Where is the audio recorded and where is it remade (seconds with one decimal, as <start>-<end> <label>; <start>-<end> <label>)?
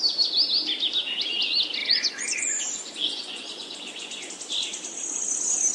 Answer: 0.0-1.8 recorded; 1.8-4.3 remade; 4.3-5.7 recorded